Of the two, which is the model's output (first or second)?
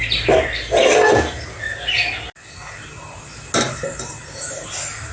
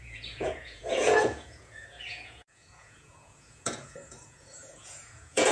second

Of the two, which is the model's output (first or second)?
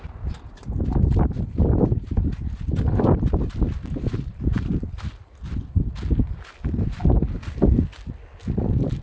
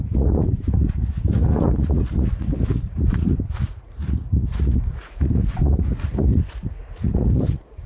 second